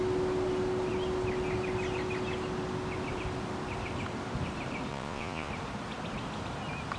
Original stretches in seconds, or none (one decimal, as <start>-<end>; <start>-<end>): 0.0-4.9; 5.5-7.0